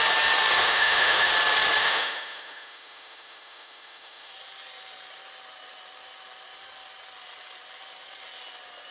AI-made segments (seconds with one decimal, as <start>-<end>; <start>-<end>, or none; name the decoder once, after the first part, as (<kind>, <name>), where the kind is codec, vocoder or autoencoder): 0.6-1.3 (autoencoder, DAC-VAE); 1.8-4.3